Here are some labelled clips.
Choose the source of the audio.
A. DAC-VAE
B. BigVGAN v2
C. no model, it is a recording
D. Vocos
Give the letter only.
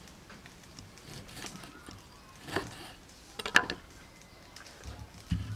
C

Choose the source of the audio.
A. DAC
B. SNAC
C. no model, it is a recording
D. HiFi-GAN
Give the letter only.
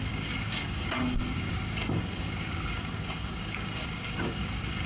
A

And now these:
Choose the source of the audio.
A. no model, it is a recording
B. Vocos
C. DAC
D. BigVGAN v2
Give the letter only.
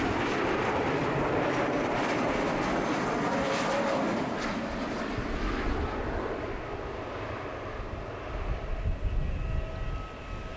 A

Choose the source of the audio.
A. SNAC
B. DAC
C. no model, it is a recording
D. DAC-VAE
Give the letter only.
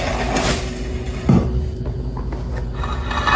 C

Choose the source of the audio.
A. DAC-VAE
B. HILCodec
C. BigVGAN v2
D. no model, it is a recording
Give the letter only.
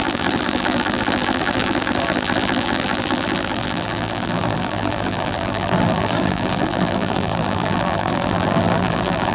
C